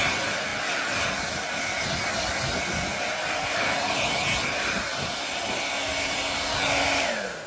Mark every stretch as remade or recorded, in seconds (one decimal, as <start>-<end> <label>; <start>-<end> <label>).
0.0-7.5 recorded

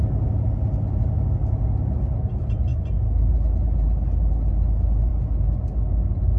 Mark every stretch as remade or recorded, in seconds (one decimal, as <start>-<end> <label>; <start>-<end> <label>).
0.0-6.4 recorded

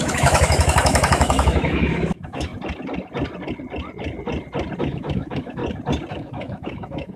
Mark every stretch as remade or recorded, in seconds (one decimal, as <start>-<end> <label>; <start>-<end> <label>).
0.0-2.5 remade; 2.5-4.8 recorded; 4.8-5.6 remade; 5.6-6.1 recorded; 6.1-7.2 remade

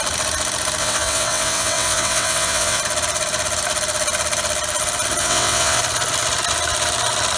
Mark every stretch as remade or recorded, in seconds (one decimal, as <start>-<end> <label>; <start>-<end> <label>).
0.0-0.8 recorded; 0.8-2.8 remade; 2.8-5.2 recorded; 5.2-5.8 remade; 5.8-7.4 recorded

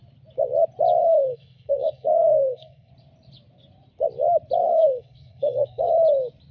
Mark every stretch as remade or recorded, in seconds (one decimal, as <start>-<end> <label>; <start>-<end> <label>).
0.0-1.0 recorded; 1.0-2.9 remade; 2.9-4.6 recorded; 4.6-5.9 remade; 5.9-6.5 recorded

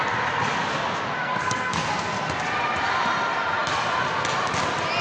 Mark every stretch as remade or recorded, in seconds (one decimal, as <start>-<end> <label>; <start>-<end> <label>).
0.0-1.2 recorded; 1.2-1.9 remade; 1.9-5.0 recorded